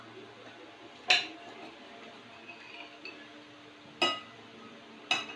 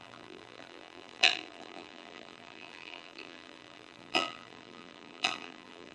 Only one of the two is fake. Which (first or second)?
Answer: second